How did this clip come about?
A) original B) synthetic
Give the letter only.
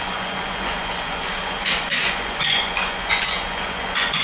B